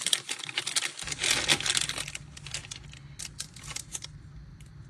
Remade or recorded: recorded